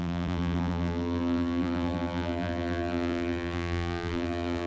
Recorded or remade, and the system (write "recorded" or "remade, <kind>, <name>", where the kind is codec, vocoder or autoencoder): remade, vocoder, BigVGAN v2